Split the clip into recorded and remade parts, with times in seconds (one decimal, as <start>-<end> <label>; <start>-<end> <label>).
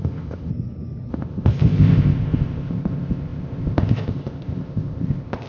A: 0.0-0.5 remade; 0.5-1.1 recorded; 1.1-5.5 remade